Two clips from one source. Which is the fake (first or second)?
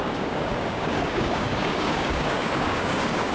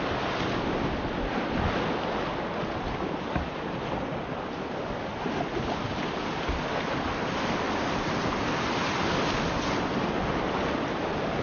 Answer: first